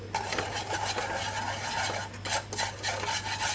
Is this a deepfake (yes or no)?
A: no